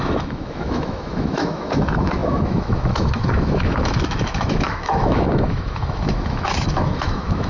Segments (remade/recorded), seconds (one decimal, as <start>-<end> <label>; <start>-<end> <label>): 0.0-7.5 remade